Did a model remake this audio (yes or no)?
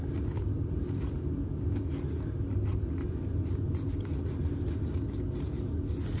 no